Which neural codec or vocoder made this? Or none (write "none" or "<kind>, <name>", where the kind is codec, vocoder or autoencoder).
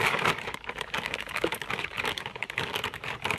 codec, DAC